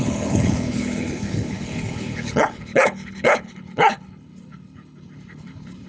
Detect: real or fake fake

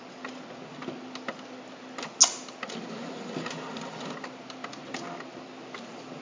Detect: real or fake real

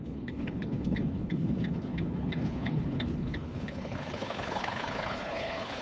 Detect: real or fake fake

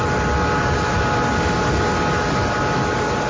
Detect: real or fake real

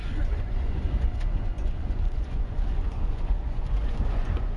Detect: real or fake fake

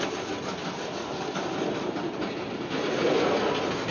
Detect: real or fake real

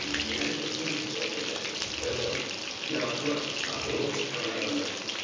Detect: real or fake real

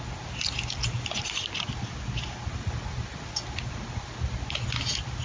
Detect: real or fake real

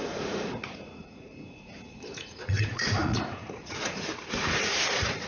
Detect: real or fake fake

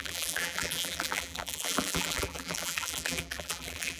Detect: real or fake fake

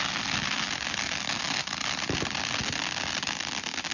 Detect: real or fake real